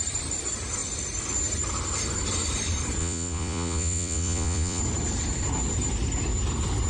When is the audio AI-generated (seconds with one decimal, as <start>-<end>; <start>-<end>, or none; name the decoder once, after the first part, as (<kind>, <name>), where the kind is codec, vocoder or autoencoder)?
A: 3.0-4.8 (vocoder, Vocos)